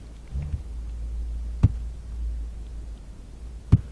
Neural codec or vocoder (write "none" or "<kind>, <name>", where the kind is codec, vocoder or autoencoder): none